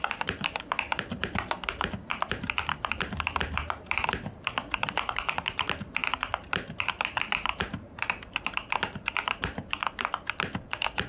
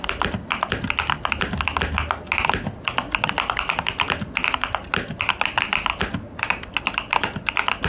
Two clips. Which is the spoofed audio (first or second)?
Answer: first